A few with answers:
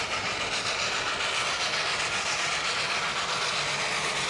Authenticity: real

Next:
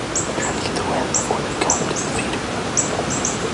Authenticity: real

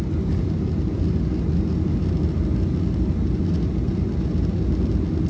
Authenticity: real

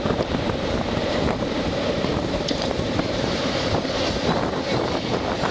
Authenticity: fake